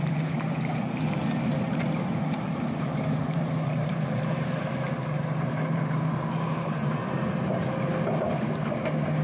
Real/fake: fake